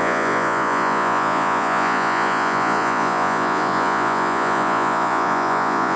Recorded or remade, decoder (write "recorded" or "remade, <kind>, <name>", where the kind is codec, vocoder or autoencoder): remade, vocoder, Vocos